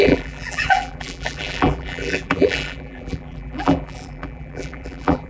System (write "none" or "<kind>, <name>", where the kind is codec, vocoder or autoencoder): vocoder, BigVGAN v2